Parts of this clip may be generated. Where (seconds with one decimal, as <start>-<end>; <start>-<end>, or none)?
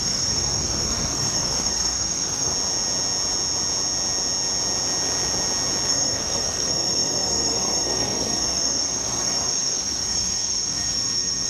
0.0-2.5; 5.9-11.5